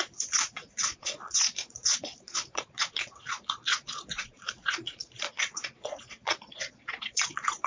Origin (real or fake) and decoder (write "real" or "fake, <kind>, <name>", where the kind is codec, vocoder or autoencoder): fake, vocoder, Vocos